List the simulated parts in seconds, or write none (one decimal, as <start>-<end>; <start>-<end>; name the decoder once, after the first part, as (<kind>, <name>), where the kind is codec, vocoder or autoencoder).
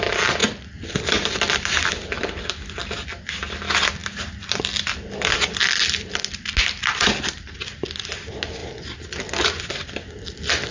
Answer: 0.4-2.5 (vocoder, BigVGAN v2); 8.6-9.7